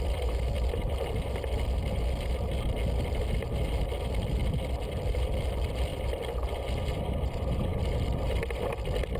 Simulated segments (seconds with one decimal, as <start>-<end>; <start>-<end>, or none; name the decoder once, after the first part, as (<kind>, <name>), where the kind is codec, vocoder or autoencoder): 0.0-4.4 (vocoder, BigVGAN v2); 5.1-7.7